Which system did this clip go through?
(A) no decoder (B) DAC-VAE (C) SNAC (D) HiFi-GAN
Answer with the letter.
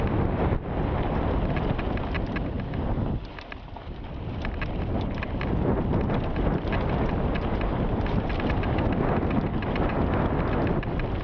A